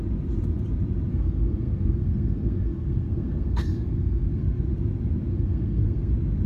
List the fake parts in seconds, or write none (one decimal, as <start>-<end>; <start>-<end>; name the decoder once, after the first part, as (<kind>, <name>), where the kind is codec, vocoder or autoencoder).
1.1-4.6 (codec, SNAC); 5.3-6.1